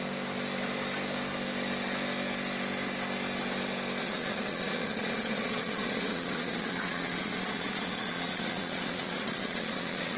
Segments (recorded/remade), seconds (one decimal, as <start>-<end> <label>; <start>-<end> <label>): 0.0-4.0 recorded; 4.0-10.2 remade